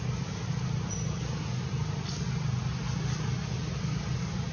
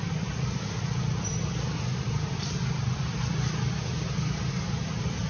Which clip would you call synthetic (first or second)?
second